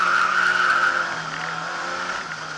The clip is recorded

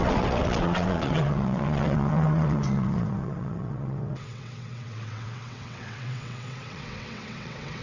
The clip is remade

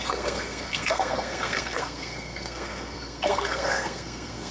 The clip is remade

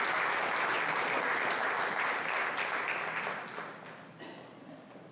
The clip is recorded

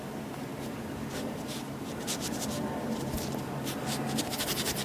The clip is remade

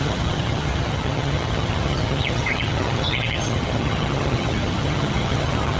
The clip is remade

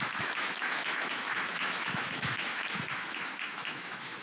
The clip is remade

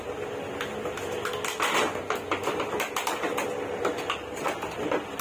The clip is recorded